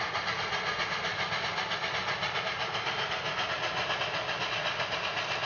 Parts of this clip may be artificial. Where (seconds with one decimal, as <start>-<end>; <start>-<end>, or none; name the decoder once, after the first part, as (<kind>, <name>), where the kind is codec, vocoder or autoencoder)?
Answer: 1.1-1.8 (vocoder, BigVGAN v2)